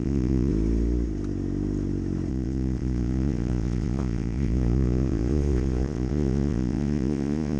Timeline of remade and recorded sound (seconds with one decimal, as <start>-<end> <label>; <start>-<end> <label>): 0.0-0.5 remade; 0.5-2.3 recorded; 2.3-7.6 remade

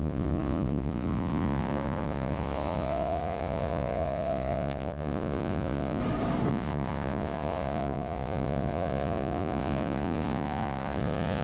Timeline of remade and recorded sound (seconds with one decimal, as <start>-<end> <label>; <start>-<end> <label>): 0.0-6.0 remade; 6.0-6.5 recorded; 6.5-11.4 remade

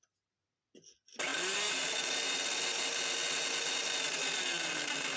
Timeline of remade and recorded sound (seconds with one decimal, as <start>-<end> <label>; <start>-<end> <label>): 0.0-5.2 recorded